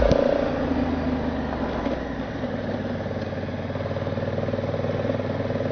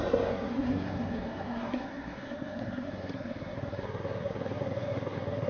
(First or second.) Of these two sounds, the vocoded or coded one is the second